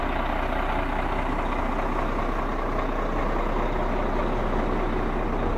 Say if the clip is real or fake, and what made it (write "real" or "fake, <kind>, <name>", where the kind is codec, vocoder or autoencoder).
real